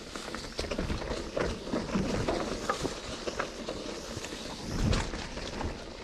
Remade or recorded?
recorded